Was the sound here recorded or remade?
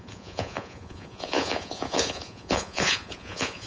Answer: remade